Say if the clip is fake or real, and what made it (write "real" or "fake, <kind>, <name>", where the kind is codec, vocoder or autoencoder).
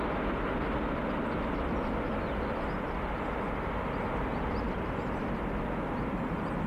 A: real